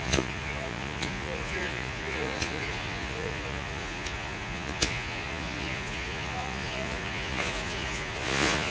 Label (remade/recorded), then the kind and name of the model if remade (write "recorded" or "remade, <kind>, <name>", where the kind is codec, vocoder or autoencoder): remade, vocoder, Vocos